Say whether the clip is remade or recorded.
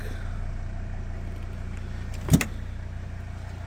recorded